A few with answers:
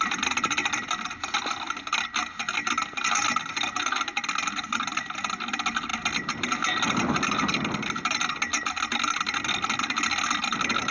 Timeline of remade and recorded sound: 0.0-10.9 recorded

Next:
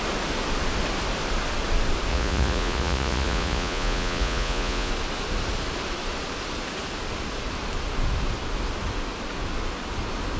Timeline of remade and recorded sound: 0.0-2.1 recorded; 2.1-4.9 remade; 4.9-10.4 recorded

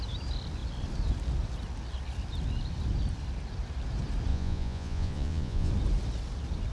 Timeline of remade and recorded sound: 0.0-4.3 recorded; 4.3-5.7 remade; 5.7-6.7 recorded

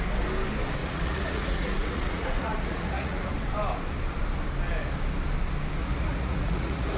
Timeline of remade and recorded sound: 0.0-0.8 recorded; 0.8-3.3 remade; 3.3-5.8 recorded; 5.8-7.0 remade

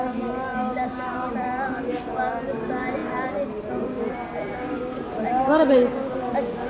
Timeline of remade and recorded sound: 0.0-6.7 recorded

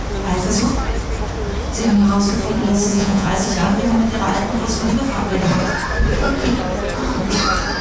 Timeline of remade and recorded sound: 0.0-2.9 recorded; 2.9-3.5 remade; 3.5-7.8 recorded